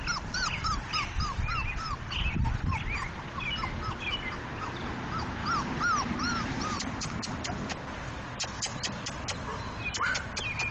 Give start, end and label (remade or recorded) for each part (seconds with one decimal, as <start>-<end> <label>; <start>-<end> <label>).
0.0-5.4 recorded; 5.4-6.8 remade; 6.8-10.7 recorded